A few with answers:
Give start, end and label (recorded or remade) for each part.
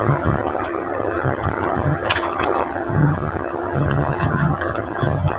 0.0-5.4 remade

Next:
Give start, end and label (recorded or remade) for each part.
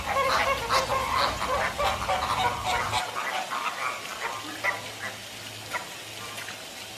0.0-7.0 recorded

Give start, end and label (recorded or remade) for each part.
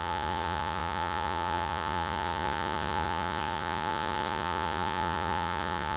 0.0-6.0 remade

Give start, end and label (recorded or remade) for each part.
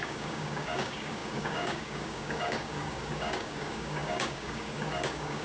0.0-5.4 remade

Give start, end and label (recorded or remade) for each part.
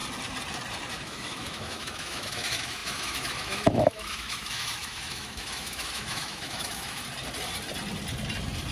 0.0-0.9 recorded; 0.9-7.0 remade; 7.0-8.7 recorded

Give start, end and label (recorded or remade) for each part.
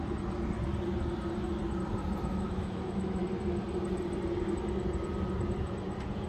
0.0-2.3 recorded; 2.3-3.2 remade; 3.2-6.3 recorded